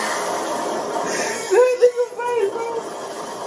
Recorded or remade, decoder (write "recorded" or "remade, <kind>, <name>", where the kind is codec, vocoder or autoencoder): recorded